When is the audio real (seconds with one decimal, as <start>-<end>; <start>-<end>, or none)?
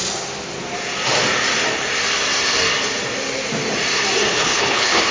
0.0-4.3